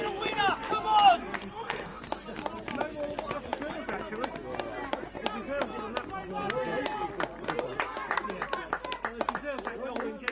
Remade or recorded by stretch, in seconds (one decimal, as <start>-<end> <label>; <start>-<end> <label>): 0.0-1.4 recorded; 1.4-2.0 remade; 2.0-10.3 recorded